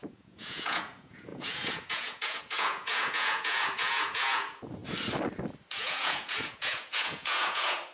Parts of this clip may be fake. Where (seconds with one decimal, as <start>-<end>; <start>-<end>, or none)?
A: 0.0-4.8; 5.7-7.9